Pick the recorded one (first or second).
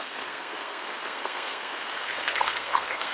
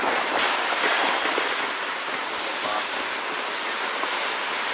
second